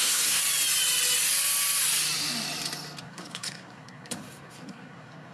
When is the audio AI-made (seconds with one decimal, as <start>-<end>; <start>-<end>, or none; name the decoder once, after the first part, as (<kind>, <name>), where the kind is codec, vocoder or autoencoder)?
0.0-0.4 (codec, SNAC); 3.0-5.3